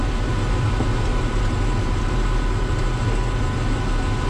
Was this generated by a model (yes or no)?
no